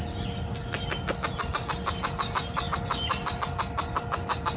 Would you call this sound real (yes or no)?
yes